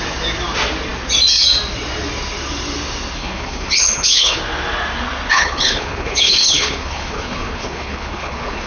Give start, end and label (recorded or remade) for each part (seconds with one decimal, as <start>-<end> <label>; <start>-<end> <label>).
0.0-3.2 recorded; 3.2-4.4 remade; 4.4-5.3 recorded; 5.3-8.7 remade